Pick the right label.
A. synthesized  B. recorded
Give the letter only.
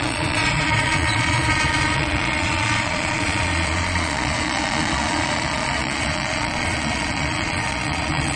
A